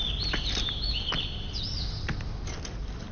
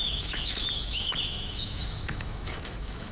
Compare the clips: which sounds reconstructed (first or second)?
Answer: second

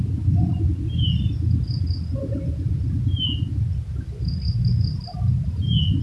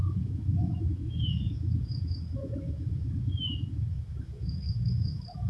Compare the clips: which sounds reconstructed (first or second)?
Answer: second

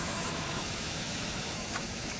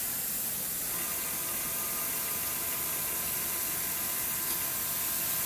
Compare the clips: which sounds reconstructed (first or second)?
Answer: first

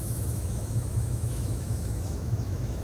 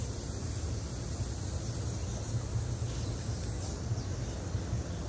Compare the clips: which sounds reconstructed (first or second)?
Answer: first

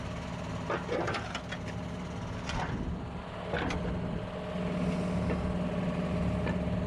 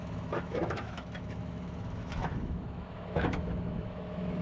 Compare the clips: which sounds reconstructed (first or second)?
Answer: second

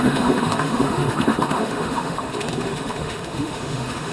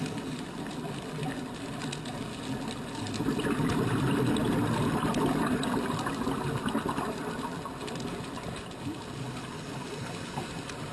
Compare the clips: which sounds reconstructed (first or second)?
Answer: first